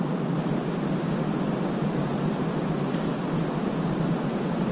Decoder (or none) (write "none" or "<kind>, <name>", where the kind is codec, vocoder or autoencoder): none